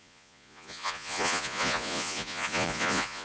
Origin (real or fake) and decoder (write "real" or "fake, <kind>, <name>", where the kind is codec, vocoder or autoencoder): fake, vocoder, Vocos